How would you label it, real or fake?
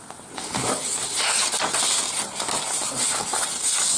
real